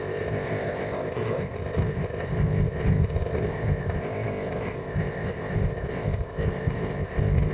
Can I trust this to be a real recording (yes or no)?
no